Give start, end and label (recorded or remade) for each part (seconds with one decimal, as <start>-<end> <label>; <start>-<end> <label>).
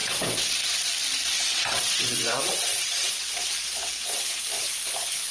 0.0-0.6 remade; 0.6-1.3 recorded; 1.3-4.4 remade; 4.4-5.3 recorded